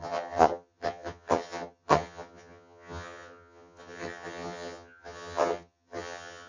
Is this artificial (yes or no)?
yes